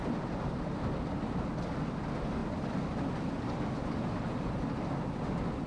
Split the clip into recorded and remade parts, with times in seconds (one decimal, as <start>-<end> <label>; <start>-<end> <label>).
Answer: 0.0-0.9 remade; 0.9-2.4 recorded; 2.4-3.9 remade; 3.9-5.7 recorded